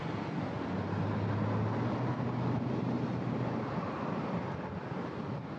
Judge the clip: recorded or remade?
recorded